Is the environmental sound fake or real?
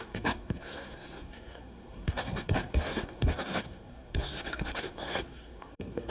fake